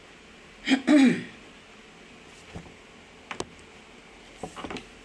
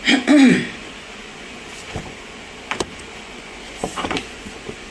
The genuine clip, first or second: first